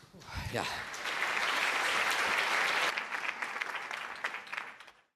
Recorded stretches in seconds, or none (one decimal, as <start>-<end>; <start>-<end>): 0.0-1.4; 2.2-4.5